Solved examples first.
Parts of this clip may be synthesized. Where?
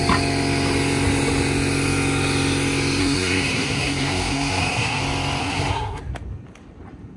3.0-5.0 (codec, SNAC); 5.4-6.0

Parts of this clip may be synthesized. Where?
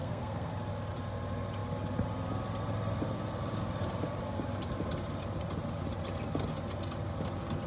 0.0-0.5 (codec, SNAC)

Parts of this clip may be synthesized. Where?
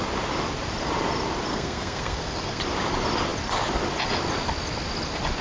1.5-2.6 (codec, SNAC)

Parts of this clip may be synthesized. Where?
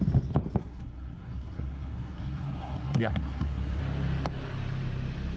0.6-3.8 (codec, SNAC)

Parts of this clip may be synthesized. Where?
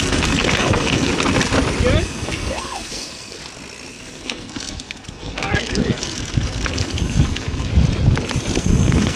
0.0-1.1 (codec, SNAC); 2.0-3.4; 3.9-7.7; 8.6-9.2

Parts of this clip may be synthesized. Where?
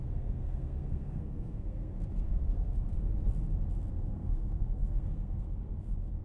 0.0-3.1 (codec, SNAC); 3.9-6.2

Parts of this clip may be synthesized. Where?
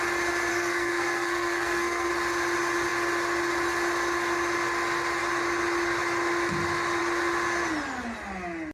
0.5-2.1 (codec, SNAC)